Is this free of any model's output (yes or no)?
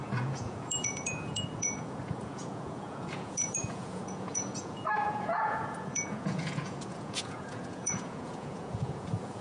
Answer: no